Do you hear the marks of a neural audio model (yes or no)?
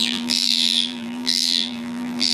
yes